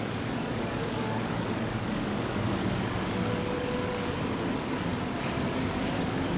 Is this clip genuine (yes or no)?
no